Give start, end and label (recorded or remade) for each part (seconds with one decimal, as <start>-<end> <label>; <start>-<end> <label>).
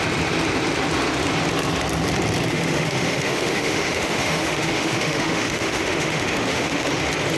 0.0-2.5 recorded; 2.5-6.9 remade; 6.9-7.4 recorded